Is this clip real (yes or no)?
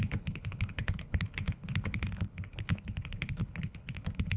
no